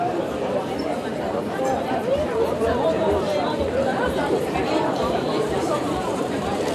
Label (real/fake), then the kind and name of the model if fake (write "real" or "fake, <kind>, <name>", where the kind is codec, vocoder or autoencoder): fake, vocoder, BigVGAN v2